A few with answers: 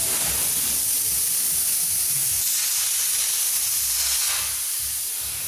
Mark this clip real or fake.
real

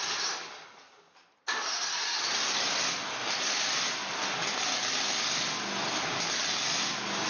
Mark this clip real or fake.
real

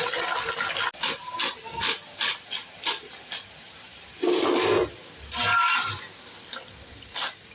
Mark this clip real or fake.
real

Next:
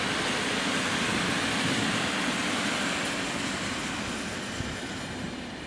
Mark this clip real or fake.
real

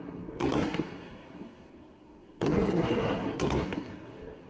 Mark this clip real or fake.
fake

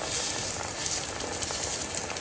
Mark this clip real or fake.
real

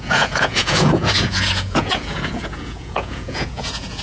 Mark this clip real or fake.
fake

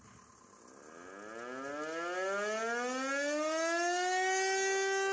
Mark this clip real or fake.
real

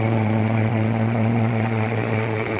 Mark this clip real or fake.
fake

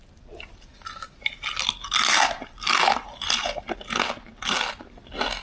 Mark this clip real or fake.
real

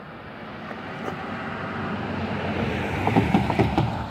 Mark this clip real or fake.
real